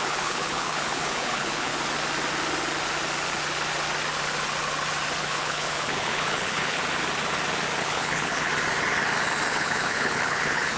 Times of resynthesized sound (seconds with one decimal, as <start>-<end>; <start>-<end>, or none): 0.0-1.7; 5.2-6.8; 7.8-8.5; 9.5-10.8